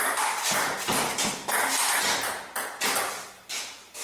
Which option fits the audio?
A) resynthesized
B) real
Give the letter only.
B